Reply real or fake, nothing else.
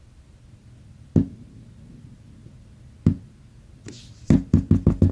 real